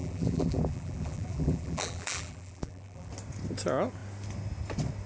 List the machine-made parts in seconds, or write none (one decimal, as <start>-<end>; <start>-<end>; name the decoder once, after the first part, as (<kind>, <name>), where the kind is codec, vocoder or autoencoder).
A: 0.0-3.1 (vocoder, BigVGAN v2)